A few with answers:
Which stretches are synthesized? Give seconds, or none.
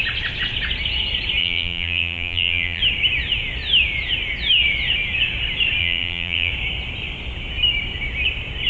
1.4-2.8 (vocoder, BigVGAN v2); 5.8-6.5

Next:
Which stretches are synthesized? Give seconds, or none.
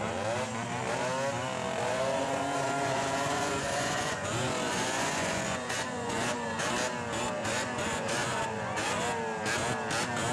1.9-6.7 (vocoder, Vocos); 7.4-8.9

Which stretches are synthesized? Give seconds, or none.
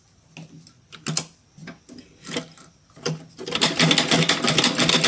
none